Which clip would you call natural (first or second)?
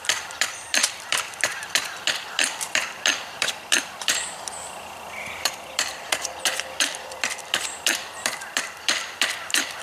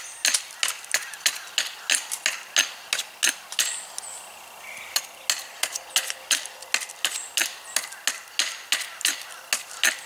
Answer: second